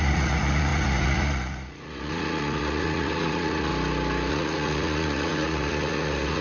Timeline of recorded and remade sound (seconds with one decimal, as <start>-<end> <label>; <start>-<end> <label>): 0.0-3.7 remade; 3.7-4.3 recorded; 4.3-6.4 remade